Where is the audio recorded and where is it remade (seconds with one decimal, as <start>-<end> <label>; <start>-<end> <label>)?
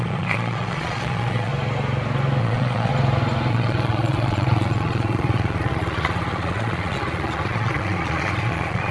0.0-1.5 remade; 1.5-2.4 recorded; 2.4-2.9 remade; 2.9-3.5 recorded; 3.5-8.9 remade